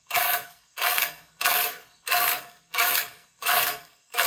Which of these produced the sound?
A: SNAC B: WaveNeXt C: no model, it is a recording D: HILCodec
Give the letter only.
A